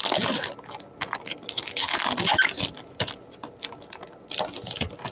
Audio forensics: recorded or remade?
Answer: recorded